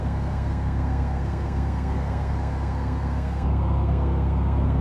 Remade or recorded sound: remade